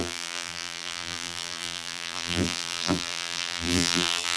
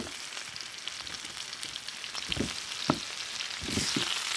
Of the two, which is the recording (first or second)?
second